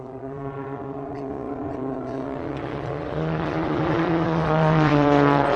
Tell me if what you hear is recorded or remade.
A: remade